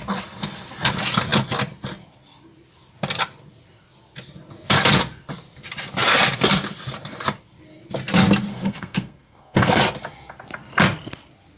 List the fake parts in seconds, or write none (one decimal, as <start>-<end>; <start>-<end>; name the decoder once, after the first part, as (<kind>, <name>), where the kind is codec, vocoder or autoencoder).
8.5-9.8 (codec, SNAC)